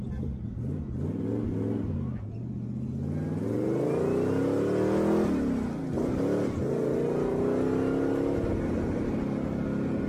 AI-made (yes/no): no